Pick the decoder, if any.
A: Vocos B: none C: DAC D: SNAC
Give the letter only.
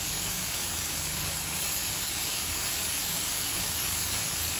C